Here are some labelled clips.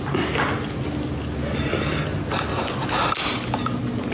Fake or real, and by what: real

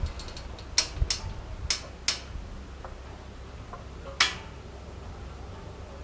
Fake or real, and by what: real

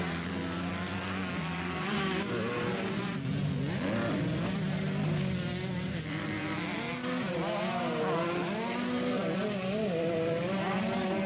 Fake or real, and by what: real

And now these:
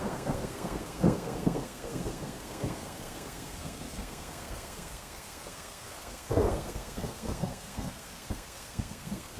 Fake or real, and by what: fake, codec, SNAC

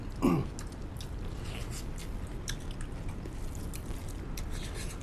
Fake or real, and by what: real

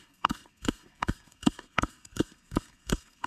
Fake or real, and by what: fake, codec, SNAC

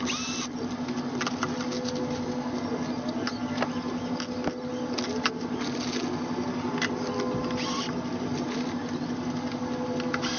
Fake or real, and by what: real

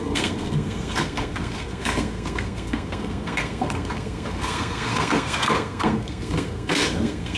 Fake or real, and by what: fake, codec, SNAC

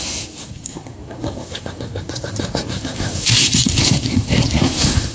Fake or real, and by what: fake, codec, SNAC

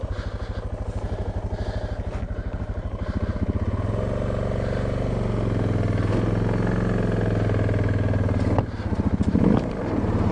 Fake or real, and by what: real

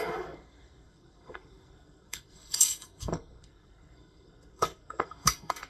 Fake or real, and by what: fake, codec, SNAC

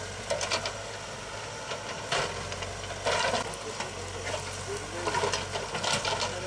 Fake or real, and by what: real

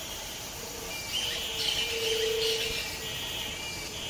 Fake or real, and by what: real